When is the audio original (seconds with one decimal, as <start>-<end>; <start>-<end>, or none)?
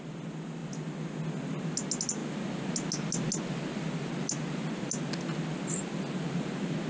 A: 0.0-6.9